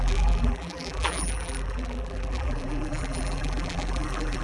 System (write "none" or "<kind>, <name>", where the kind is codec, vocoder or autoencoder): vocoder, BigVGAN v2